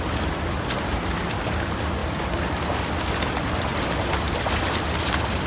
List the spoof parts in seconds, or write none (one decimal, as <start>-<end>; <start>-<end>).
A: 2.0-2.8; 3.7-5.5